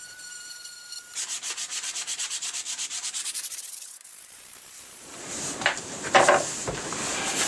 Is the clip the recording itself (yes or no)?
no